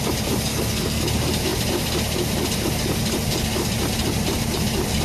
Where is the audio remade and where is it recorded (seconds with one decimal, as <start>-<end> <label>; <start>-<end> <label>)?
0.0-0.5 recorded; 0.5-1.0 remade; 1.0-5.0 recorded